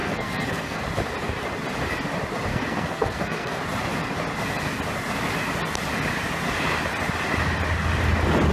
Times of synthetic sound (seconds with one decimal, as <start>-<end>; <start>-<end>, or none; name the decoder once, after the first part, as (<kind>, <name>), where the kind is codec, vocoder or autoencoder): 0.0-0.8 (codec, SNAC); 2.5-3.6